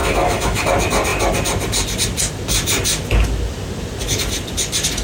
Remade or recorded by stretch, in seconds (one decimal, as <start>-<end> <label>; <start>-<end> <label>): 0.0-0.7 remade; 0.7-5.0 recorded

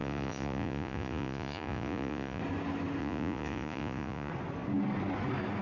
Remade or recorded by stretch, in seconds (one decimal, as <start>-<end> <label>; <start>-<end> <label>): 0.0-2.4 remade; 2.4-3.0 recorded; 3.0-4.3 remade; 4.3-5.6 recorded

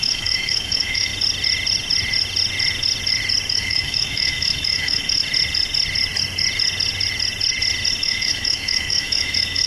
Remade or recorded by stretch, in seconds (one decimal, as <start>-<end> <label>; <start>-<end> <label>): 0.0-1.1 remade; 1.1-3.5 recorded; 3.5-5.2 remade; 5.2-8.0 recorded; 8.0-9.7 remade

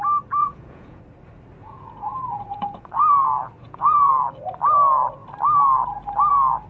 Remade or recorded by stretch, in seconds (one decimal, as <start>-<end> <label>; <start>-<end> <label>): 0.0-0.4 recorded; 0.4-1.0 remade; 1.0-1.6 recorded; 1.6-2.8 remade; 2.8-3.6 recorded; 3.6-4.1 remade; 4.1-6.7 recorded

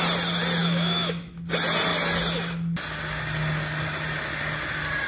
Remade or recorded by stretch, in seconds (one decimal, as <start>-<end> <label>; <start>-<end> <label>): 0.0-0.6 recorded; 0.6-1.4 remade; 1.4-5.1 recorded